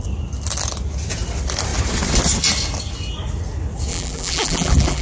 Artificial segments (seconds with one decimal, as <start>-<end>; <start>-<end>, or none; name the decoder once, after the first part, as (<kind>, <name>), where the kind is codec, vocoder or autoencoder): 3.9-5.0 (vocoder, BigVGAN v2)